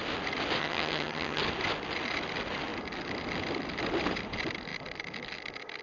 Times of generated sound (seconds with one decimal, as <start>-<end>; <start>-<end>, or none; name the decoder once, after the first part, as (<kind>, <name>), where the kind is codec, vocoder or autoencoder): 0.6-1.4 (vocoder, HiFi-GAN)